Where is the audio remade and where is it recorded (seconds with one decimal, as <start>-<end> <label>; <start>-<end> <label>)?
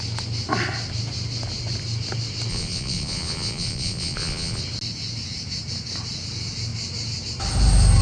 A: 0.0-2.5 recorded; 2.5-4.6 remade; 4.6-8.0 recorded